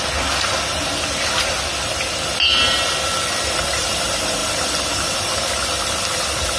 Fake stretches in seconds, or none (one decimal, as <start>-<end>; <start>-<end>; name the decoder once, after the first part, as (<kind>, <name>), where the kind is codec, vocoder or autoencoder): none